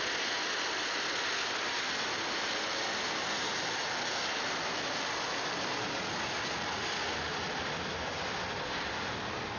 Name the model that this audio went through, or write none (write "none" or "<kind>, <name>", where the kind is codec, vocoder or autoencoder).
none